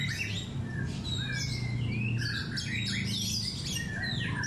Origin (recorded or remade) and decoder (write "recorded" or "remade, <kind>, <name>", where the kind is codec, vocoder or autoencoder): recorded